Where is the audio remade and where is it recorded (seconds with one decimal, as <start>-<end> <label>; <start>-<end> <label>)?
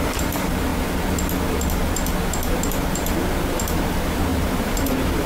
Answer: 0.0-0.7 remade; 0.7-2.7 recorded; 2.7-5.3 remade